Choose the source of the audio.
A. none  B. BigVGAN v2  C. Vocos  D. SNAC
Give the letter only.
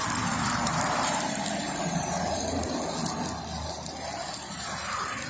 A